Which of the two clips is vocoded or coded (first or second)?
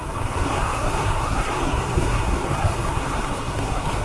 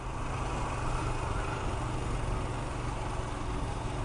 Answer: first